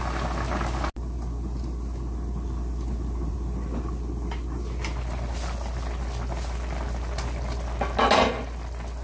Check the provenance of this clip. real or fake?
real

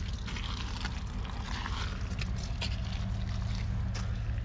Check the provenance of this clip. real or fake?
real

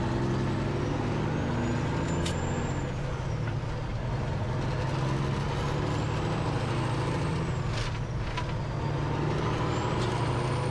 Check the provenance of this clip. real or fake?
real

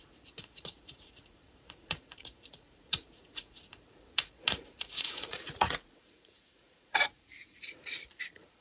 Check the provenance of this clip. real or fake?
fake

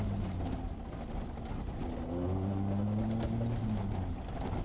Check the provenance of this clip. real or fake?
real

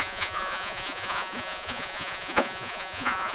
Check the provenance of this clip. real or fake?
fake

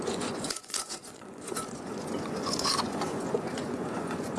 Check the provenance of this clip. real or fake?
fake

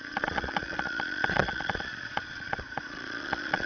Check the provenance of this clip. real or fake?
fake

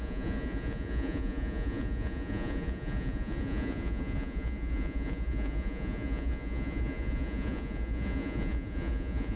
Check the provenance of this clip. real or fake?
fake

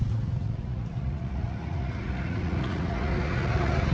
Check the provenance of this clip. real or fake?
fake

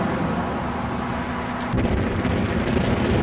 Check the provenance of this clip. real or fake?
real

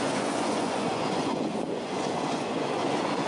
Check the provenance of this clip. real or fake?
fake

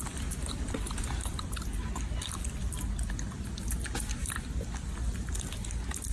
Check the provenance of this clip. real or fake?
real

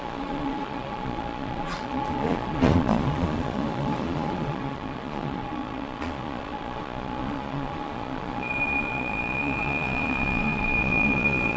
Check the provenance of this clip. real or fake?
fake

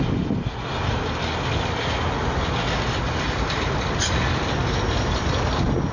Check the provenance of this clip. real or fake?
real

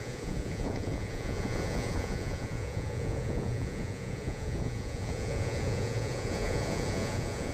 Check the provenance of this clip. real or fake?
fake